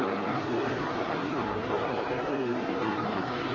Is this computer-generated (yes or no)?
yes